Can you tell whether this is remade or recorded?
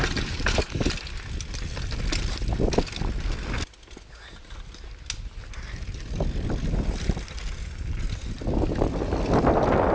recorded